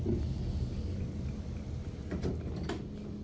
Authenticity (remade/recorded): recorded